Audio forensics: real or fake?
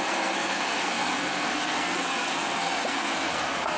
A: fake